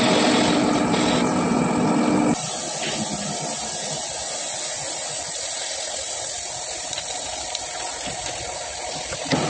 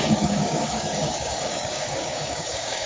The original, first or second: first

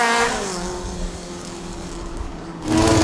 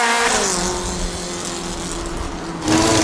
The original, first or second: second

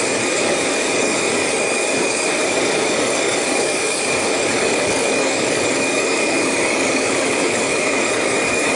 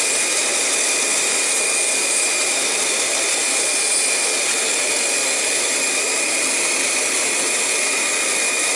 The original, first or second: second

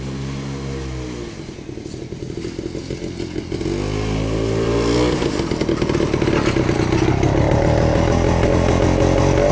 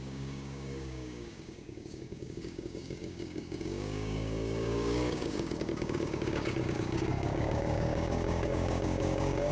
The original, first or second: first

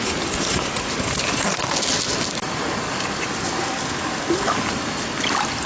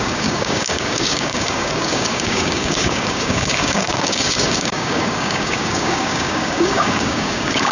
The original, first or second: first